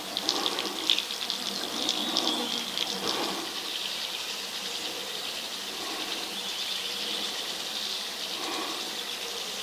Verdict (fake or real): real